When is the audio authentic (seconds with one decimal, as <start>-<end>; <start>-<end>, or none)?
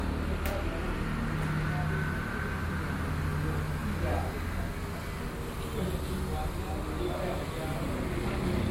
0.0-8.7